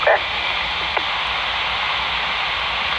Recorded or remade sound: recorded